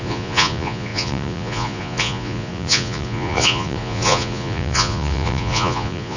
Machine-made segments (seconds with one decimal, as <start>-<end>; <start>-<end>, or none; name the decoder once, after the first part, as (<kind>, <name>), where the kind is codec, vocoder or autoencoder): 0.0-6.2 (vocoder, Vocos)